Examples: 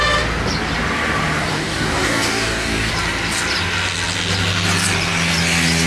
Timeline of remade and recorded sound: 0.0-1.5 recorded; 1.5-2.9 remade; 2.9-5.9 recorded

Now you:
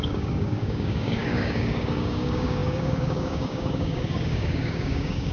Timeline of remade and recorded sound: 0.0-5.3 remade

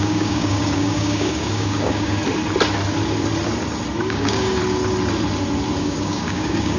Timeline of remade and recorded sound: 0.0-2.2 remade; 2.2-4.0 recorded; 4.0-4.6 remade; 4.6-5.8 recorded; 5.8-6.8 remade

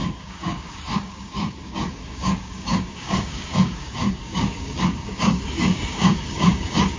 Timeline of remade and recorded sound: 0.0-7.0 remade